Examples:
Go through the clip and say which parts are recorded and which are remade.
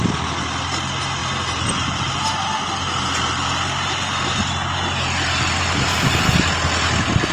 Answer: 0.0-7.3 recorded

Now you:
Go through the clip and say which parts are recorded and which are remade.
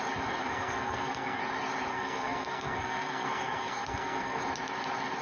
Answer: 0.0-0.4 recorded; 0.4-1.4 remade; 1.4-1.9 recorded; 1.9-4.4 remade; 4.4-5.2 recorded